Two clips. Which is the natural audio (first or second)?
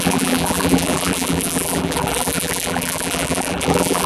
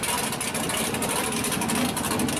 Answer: second